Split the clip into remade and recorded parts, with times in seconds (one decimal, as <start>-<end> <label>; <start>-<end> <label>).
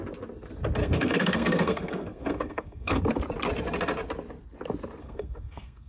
0.0-0.8 recorded; 0.8-3.0 remade; 3.0-5.0 recorded; 5.0-5.9 remade